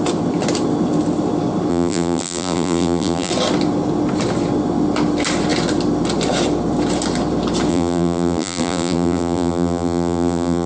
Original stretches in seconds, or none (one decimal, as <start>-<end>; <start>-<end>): 0.0-1.7; 3.3-7.7